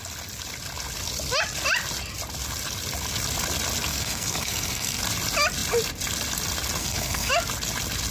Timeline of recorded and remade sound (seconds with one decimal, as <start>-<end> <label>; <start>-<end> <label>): 0.0-3.9 recorded; 3.9-5.0 remade; 5.0-6.8 recorded; 6.8-7.3 remade; 7.3-8.1 recorded